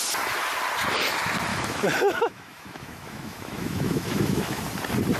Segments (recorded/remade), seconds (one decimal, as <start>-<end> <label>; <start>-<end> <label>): 0.0-1.5 recorded; 1.5-4.6 remade; 4.6-5.2 recorded